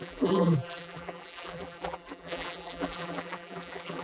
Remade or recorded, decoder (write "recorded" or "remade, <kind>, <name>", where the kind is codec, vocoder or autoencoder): remade, vocoder, BigVGAN v2